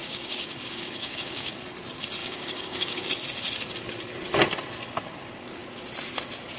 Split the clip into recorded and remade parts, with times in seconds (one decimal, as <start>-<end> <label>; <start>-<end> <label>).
0.0-1.5 remade; 1.5-2.2 recorded; 2.2-3.1 remade; 3.1-6.6 recorded